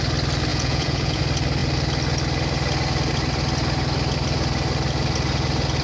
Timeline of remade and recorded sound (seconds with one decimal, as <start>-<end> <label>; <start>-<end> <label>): 0.0-0.5 recorded; 0.5-1.2 remade; 1.2-5.8 recorded